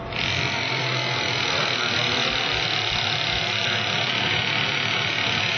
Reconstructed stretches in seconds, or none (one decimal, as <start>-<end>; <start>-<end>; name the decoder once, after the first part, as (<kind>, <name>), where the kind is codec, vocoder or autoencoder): none